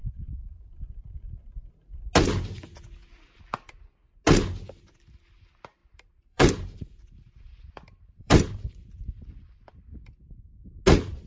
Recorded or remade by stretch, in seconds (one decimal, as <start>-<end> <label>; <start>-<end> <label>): 0.0-1.8 remade; 1.8-5.8 recorded; 5.8-9.7 remade; 9.7-11.3 recorded